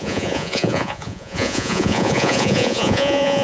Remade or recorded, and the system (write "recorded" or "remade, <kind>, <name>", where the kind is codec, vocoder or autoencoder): remade, vocoder, Vocos